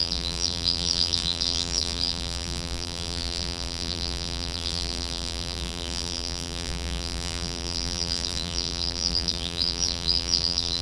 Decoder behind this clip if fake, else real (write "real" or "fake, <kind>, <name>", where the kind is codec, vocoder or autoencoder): fake, vocoder, BigVGAN v2